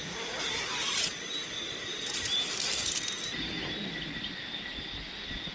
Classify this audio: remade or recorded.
recorded